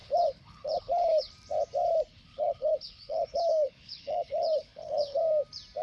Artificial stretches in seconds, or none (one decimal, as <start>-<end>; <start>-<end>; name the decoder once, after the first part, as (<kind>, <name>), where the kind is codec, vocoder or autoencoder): 0.0-1.3 (codec, HILCodec); 2.1-5.2